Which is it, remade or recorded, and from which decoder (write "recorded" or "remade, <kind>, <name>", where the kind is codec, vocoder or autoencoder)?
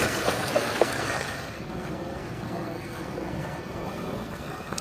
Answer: remade, codec, SNAC